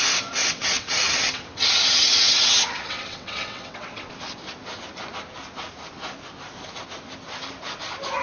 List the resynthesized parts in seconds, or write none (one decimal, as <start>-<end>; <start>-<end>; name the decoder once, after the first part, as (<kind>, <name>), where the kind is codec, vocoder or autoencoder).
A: 0.4-4.1 (vocoder, WaveNeXt)